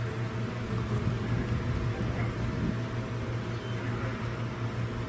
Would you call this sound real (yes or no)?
yes